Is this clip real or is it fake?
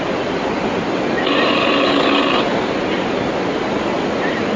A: real